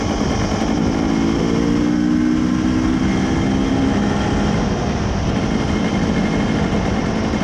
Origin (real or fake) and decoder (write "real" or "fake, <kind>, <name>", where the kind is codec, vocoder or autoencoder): real